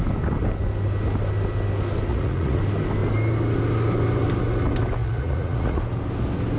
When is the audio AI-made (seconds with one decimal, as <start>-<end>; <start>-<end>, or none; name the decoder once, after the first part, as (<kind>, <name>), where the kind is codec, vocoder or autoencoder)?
2.1-2.6 (vocoder, Vocos); 5.0-5.8